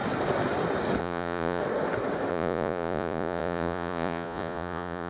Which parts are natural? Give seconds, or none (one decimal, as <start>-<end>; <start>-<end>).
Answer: 0.0-1.0; 1.6-2.3